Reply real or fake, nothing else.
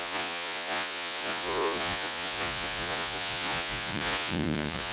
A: fake